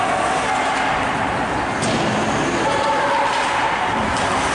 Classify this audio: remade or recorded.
recorded